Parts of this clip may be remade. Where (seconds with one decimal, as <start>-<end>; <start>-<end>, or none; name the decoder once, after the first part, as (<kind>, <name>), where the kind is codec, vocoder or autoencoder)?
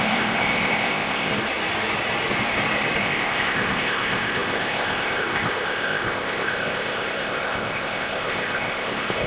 0.0-1.3 (codec, ZipCodec); 3.0-9.3